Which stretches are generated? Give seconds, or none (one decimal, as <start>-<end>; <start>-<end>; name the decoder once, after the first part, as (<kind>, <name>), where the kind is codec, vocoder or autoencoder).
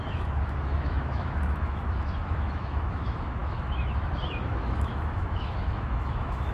0.0-6.5 (autoencoder, DAC-VAE)